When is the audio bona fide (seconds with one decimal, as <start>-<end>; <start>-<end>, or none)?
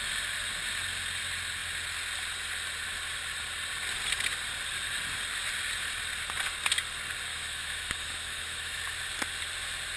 0.0-7.3; 8.8-10.0